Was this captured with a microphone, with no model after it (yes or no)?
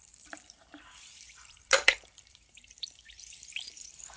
no